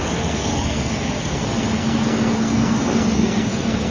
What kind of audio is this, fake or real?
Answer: fake